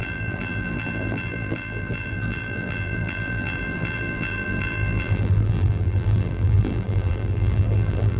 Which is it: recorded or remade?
remade